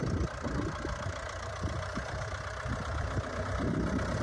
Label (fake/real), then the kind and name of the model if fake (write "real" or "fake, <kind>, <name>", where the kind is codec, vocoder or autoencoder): fake, vocoder, BigVGAN v2